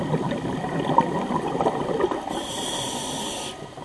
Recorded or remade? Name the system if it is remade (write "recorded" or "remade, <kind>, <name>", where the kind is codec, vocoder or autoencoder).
recorded